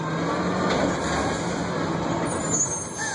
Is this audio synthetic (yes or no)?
no